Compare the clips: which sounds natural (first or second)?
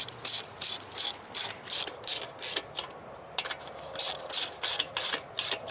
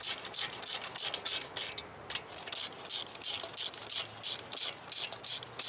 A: second